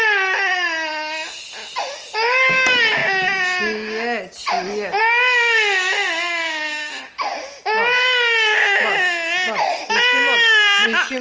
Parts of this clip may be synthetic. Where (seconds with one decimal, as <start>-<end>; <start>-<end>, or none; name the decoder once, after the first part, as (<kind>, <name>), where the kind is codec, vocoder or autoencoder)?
6.4-7.0 (codec, DAC)